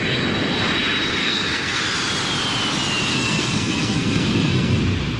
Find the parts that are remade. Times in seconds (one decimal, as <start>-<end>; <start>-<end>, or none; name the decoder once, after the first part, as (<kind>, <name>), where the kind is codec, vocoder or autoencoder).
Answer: 1.2-1.8 (codec, SNAC); 3.1-4.8